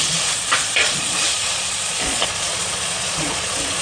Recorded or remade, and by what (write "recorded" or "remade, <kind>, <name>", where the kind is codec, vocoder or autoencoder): remade, vocoder, Vocos